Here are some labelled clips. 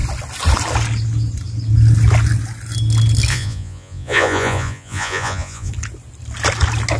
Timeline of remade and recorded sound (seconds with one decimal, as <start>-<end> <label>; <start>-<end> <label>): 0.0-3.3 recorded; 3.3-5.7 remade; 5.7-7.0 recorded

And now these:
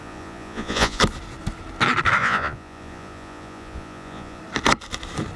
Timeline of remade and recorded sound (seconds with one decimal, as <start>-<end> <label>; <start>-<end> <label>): 0.0-1.0 remade; 1.0-2.2 recorded; 2.2-4.4 remade; 4.4-5.4 recorded

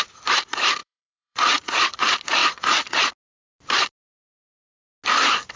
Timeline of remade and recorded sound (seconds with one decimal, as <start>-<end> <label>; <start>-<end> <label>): 0.0-0.8 recorded; 0.8-2.0 remade; 2.0-2.4 recorded; 2.4-3.1 remade; 3.1-5.6 recorded

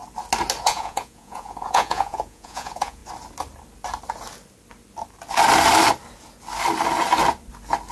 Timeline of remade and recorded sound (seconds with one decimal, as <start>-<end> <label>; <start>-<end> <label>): 0.0-0.6 recorded; 0.6-3.0 remade; 3.0-7.9 recorded

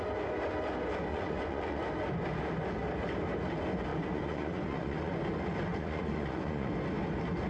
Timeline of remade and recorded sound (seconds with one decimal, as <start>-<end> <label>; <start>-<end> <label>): 0.0-1.1 recorded; 1.1-1.9 remade; 1.9-3.9 recorded; 3.9-5.2 remade; 5.2-5.7 recorded; 5.7-6.7 remade; 6.7-7.5 recorded